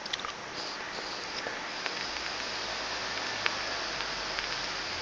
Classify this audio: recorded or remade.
recorded